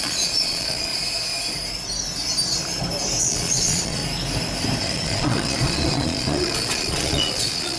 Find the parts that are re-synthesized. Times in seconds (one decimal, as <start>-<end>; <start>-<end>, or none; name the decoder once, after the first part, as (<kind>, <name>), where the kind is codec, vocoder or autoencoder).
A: 0.0-0.9 (vocoder, Vocos); 3.2-4.0; 4.8-7.8